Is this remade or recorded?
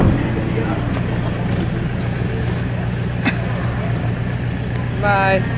recorded